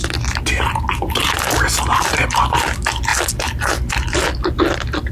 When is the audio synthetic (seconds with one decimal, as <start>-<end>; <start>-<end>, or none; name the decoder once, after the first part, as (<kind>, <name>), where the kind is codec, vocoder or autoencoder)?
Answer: none